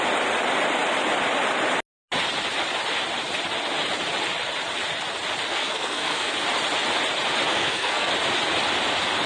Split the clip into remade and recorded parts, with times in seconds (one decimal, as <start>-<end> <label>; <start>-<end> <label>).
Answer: 0.0-5.5 recorded; 5.5-6.3 remade; 6.3-7.5 recorded; 7.5-8.1 remade; 8.1-9.3 recorded